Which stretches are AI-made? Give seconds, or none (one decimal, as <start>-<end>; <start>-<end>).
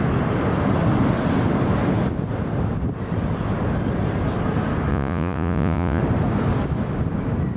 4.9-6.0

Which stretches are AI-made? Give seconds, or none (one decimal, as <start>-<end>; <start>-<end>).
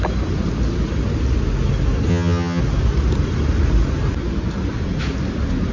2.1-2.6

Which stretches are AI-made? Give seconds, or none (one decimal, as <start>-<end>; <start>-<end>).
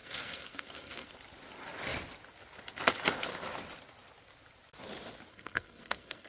0.0-1.1; 5.3-6.3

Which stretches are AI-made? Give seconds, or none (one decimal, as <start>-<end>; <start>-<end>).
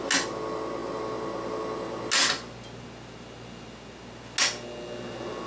none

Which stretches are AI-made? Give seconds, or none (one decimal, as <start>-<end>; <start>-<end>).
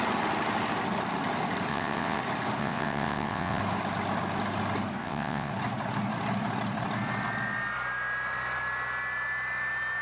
1.7-2.2; 2.6-3.6; 5.0-5.5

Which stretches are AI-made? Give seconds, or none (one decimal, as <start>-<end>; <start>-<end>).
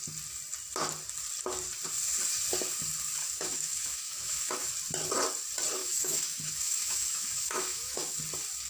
3.2-4.7; 5.8-8.2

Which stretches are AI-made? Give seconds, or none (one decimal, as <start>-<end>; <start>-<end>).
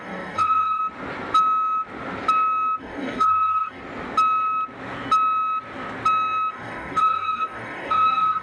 0.0-0.8; 2.8-3.8; 6.5-8.4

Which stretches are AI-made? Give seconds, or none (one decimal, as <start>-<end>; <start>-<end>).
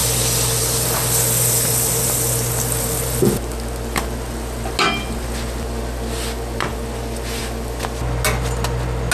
none